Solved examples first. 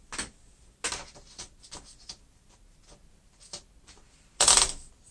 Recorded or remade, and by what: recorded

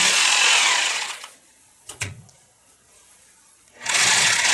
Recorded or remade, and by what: remade, vocoder, Vocos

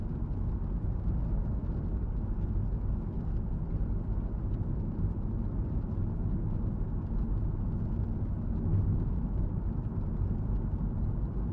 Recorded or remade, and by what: recorded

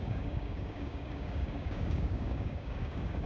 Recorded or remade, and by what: remade, codec, DAC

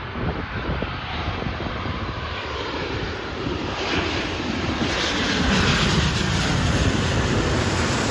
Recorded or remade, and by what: remade, vocoder, BigVGAN v2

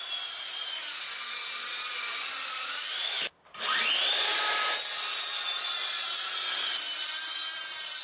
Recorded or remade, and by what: recorded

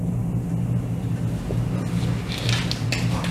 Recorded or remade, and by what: recorded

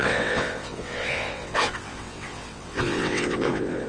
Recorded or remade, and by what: remade, vocoder, WaveNeXt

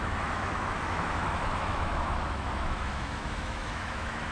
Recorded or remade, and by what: remade, autoencoder, DAC-VAE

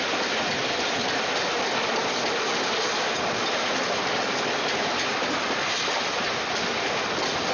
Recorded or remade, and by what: recorded